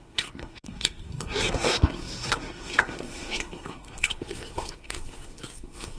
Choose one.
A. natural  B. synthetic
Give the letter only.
B